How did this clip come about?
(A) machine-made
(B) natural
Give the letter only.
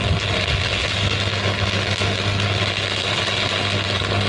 B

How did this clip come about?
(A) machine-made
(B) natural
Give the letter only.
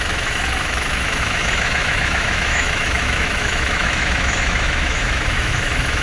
A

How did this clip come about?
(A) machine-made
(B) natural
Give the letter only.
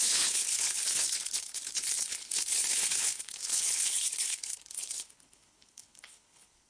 A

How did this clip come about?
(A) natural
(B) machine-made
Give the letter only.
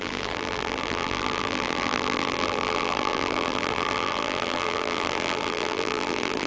B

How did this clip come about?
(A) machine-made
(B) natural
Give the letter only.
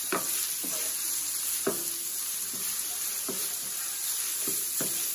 B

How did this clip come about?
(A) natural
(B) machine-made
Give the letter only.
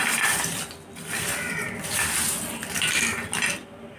A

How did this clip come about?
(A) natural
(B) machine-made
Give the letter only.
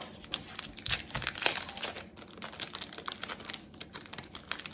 A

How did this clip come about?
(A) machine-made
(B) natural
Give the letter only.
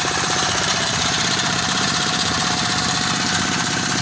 A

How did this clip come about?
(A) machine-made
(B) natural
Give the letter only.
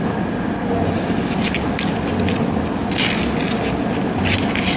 B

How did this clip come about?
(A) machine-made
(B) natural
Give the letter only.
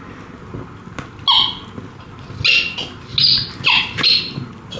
B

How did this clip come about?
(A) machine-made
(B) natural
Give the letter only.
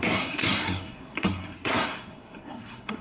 A